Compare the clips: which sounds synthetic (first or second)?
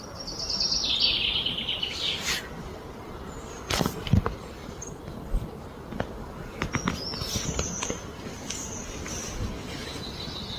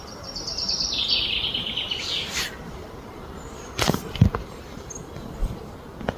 second